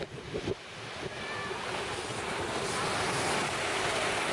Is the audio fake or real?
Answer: real